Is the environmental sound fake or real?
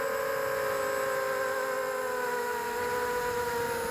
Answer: real